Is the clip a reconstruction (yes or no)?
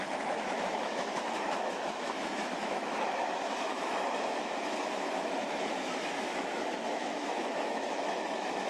yes